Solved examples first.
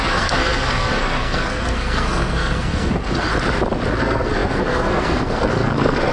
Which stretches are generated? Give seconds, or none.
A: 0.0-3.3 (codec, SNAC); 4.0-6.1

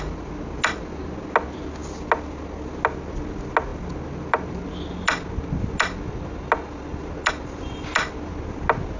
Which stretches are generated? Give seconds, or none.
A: none

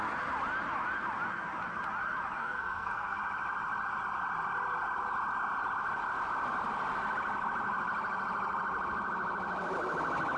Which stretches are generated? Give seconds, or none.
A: 2.4-3.2 (codec, SNAC)

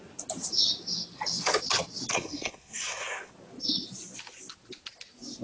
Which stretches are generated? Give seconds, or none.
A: 2.1-3.3 (codec, SNAC)

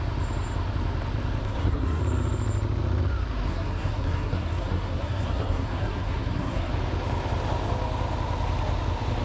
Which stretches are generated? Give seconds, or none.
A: 1.4-2.0 (codec, SNAC); 3.5-6.7

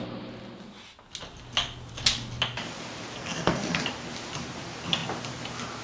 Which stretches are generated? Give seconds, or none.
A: 3.2-3.8 (codec, SNAC)

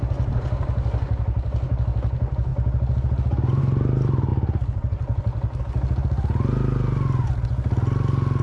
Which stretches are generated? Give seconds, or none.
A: none